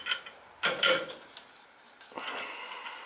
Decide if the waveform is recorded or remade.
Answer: recorded